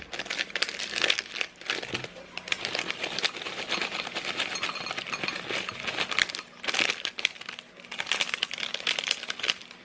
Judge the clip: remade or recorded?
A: recorded